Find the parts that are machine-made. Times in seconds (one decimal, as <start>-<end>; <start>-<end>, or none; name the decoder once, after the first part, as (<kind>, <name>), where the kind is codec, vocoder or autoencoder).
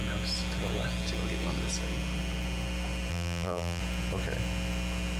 3.1-3.8 (vocoder, BigVGAN v2)